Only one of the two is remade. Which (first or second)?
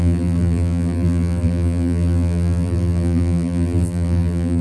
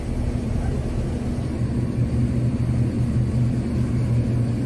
first